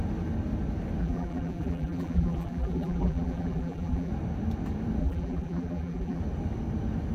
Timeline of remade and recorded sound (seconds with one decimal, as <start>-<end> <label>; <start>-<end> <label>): 0.0-1.0 recorded; 1.0-4.1 remade; 4.1-5.0 recorded; 5.0-6.2 remade; 6.2-7.1 recorded